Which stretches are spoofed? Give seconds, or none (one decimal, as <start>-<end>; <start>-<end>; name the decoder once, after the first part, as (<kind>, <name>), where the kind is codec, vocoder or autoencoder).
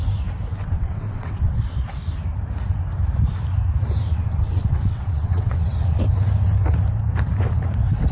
0.6-1.6 (vocoder, WaveNeXt); 4.1-6.0